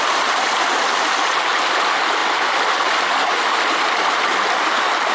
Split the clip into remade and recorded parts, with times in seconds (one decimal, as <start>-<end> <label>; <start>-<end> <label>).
0.0-5.1 recorded

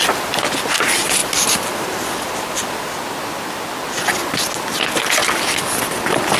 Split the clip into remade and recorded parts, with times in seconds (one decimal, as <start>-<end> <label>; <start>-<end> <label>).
0.0-6.4 recorded

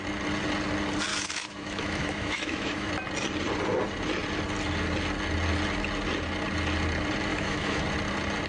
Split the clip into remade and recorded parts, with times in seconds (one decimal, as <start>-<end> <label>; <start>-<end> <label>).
0.0-1.1 recorded; 1.1-2.9 remade; 2.9-7.3 recorded; 7.3-7.8 remade; 7.8-8.5 recorded

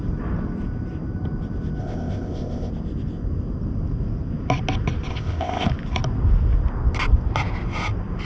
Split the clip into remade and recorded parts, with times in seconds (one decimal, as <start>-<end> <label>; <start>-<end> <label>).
0.0-1.8 recorded; 1.8-2.7 remade; 2.7-5.1 recorded; 5.1-5.7 remade; 5.7-8.2 recorded

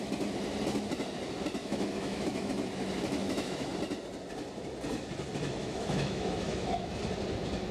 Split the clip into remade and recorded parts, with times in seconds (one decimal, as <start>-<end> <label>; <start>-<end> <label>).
0.0-1.6 recorded; 1.6-2.5 remade; 2.5-3.2 recorded; 3.2-3.7 remade; 3.7-5.6 recorded; 5.6-7.0 remade; 7.0-7.7 recorded

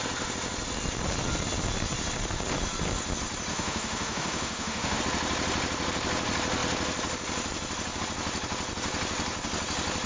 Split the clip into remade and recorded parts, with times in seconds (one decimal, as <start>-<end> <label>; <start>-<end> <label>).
0.0-3.5 recorded; 3.5-5.0 remade; 5.0-10.1 recorded